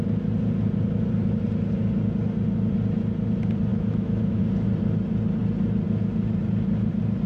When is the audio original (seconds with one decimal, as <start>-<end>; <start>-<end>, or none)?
0.0-3.7; 4.4-7.3